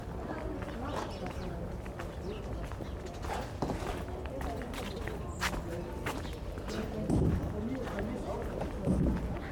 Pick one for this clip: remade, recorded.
recorded